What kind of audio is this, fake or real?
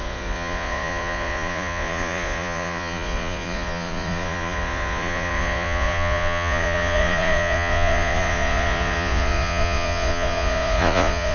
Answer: fake